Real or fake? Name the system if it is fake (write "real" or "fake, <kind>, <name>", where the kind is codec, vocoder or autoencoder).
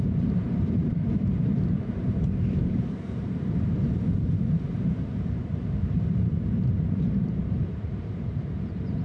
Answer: fake, vocoder, BigVGAN v2